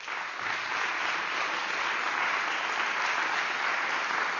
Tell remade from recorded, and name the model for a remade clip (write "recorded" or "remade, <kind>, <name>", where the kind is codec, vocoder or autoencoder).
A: recorded